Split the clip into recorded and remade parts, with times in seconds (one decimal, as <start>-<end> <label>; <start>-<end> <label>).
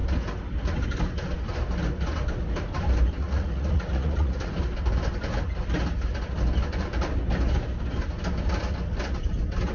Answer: 0.0-3.2 recorded; 3.2-4.5 remade; 4.5-9.7 recorded